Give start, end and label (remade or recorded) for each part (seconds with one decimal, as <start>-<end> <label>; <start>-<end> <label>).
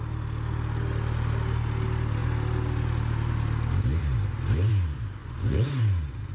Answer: 0.0-5.2 recorded; 5.2-5.8 remade; 5.8-6.3 recorded